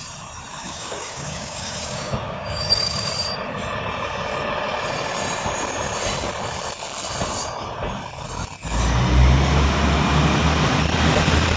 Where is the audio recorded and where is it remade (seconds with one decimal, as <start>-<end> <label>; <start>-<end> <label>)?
0.0-0.5 recorded; 0.5-3.1 remade; 3.1-11.6 recorded